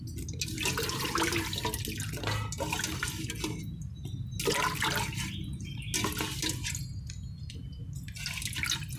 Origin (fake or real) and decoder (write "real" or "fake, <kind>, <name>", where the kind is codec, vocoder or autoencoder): real